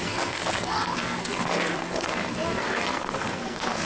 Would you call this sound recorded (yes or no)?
no